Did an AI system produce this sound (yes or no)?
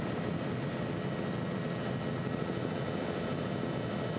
no